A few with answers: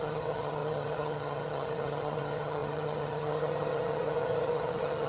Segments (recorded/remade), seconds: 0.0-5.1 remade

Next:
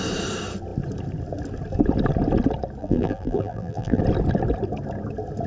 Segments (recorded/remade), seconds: 0.0-2.8 recorded; 2.8-4.0 remade; 4.0-5.5 recorded

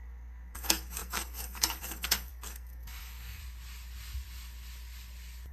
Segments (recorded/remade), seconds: 0.0-3.4 remade; 3.4-5.5 recorded

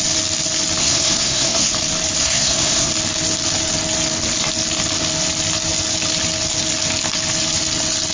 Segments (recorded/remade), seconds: 0.0-0.8 recorded; 0.8-1.7 remade; 1.7-2.2 recorded; 2.2-2.9 remade; 2.9-8.1 recorded

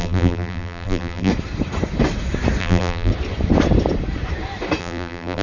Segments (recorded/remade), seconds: 0.0-1.3 remade; 1.3-2.6 recorded; 2.6-3.1 remade; 3.1-4.8 recorded; 4.8-5.4 remade

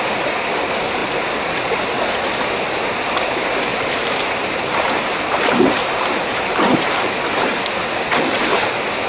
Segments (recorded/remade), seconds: 0.0-3.7 recorded; 3.7-7.1 remade; 7.1-9.1 recorded

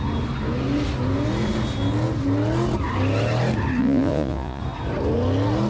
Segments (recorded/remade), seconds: 0.0-3.8 recorded; 3.8-4.6 remade; 4.6-5.7 recorded

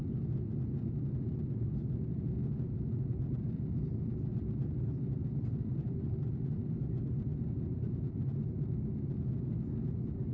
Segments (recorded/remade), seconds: 0.0-4.3 recorded; 4.3-8.9 remade; 8.9-10.3 recorded